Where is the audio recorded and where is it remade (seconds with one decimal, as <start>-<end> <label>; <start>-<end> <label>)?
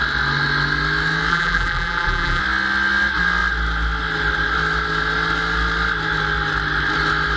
0.0-1.3 recorded; 1.3-2.4 remade; 2.4-7.4 recorded